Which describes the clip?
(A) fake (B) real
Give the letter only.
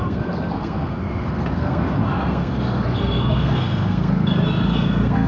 A